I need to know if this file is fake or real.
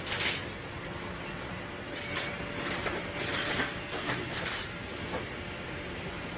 real